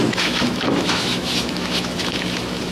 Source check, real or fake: fake